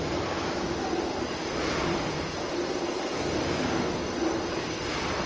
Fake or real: real